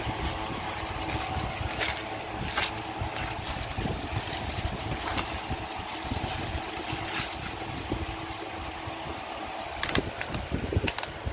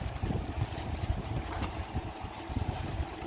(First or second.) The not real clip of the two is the second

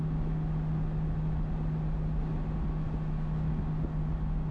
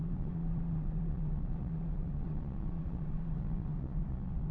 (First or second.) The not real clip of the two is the second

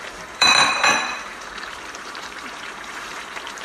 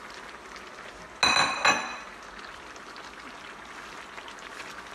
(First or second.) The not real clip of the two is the first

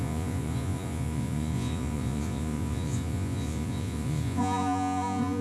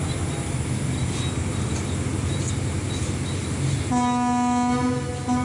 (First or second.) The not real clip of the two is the first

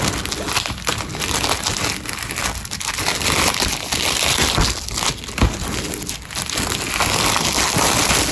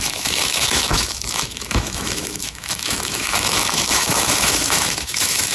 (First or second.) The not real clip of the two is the second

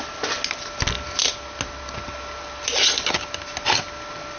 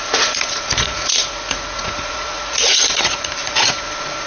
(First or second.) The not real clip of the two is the second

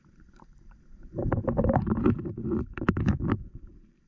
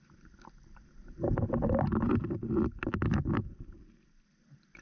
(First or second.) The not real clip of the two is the first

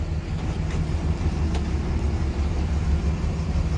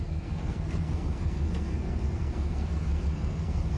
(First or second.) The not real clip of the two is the second